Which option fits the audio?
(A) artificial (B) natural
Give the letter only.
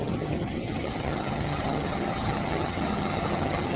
A